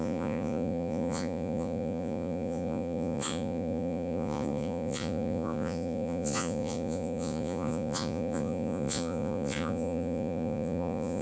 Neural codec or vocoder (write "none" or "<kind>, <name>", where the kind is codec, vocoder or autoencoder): vocoder, Vocos